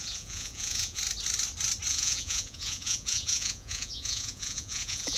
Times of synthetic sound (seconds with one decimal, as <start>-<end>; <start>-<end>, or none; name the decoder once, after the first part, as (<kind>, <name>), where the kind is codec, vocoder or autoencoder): 0.0-1.0 (vocoder, Vocos); 1.9-5.2